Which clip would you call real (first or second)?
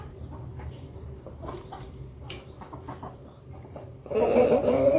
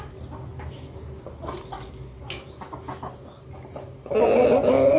second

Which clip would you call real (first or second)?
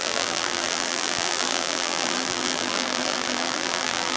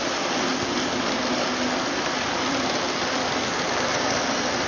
second